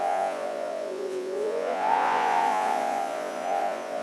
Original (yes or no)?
no